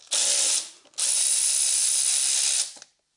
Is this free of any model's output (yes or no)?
yes